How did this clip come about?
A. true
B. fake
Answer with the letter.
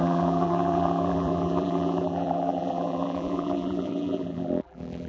B